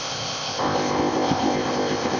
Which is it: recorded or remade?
remade